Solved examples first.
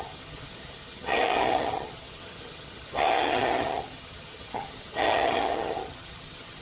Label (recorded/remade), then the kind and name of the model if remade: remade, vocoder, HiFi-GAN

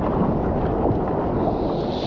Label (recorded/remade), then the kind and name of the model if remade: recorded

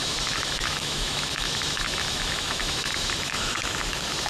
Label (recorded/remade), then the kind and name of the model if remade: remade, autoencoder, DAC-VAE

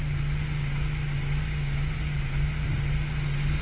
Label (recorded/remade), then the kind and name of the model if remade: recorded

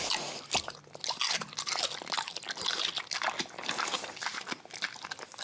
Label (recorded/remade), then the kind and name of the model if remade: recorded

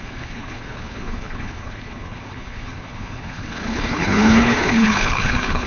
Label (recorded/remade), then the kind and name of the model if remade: remade, codec, HILCodec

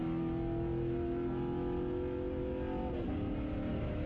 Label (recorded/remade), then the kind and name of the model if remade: recorded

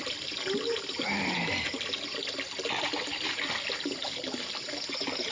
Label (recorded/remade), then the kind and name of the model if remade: recorded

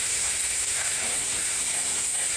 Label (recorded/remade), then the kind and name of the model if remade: remade, codec, SNAC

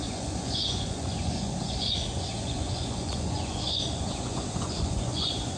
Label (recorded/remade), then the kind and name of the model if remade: remade, vocoder, Vocos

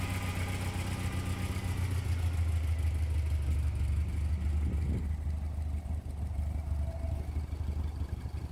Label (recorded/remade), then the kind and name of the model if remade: recorded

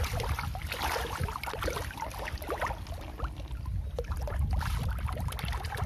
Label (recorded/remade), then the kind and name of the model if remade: recorded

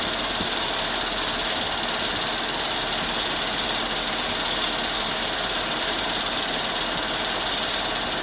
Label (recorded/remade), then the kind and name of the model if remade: recorded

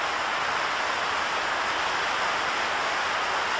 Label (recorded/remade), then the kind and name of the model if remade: recorded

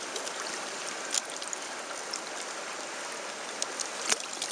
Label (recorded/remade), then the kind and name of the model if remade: recorded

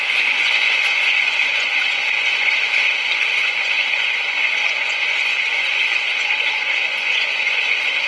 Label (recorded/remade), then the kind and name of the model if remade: remade, vocoder, Vocos